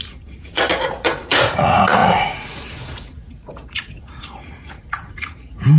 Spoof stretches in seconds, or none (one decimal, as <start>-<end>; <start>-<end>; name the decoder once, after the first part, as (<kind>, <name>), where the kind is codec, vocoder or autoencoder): 0.0-5.8 (vocoder, Vocos)